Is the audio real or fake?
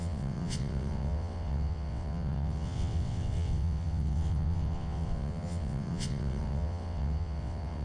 fake